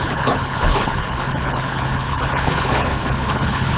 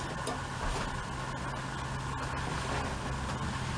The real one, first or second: second